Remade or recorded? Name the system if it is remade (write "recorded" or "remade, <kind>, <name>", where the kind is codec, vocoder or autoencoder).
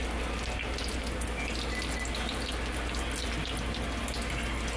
recorded